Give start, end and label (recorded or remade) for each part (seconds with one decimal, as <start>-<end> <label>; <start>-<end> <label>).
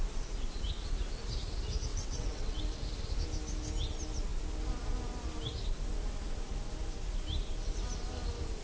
0.0-1.9 recorded; 1.9-2.6 remade; 2.6-8.6 recorded